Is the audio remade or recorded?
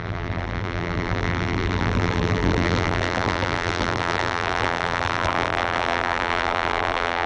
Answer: remade